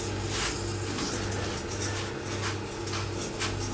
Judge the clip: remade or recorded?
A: recorded